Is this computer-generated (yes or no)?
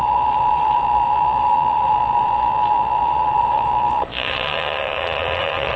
yes